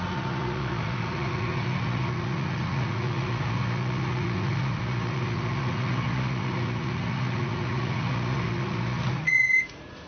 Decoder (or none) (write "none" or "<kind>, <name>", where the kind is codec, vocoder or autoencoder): vocoder, Vocos